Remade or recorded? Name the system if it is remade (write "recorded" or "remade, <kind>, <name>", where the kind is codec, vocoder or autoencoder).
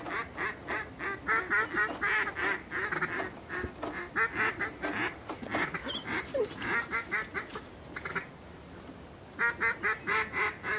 recorded